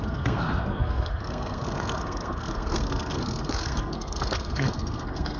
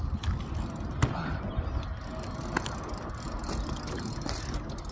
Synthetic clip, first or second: first